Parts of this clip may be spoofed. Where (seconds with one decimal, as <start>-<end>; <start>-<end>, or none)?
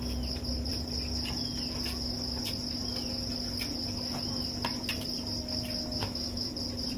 6.0-6.5